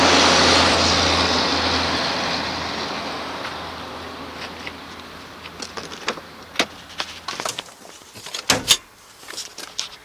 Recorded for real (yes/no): yes